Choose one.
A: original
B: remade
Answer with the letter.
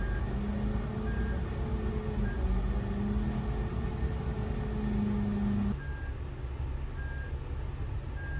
A